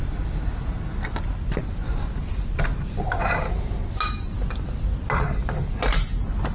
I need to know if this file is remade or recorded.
recorded